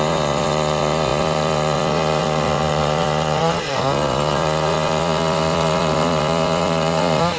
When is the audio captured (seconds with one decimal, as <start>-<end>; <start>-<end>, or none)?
none

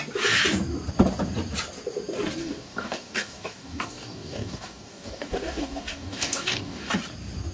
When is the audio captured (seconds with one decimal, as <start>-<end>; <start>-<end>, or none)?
0.0-2.4; 6.9-7.5